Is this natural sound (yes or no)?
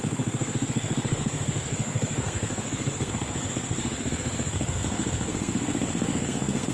no